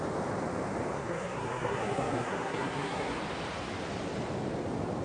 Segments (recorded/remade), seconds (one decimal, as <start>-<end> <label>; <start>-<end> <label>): 0.0-0.9 recorded; 0.9-3.2 remade; 3.2-5.0 recorded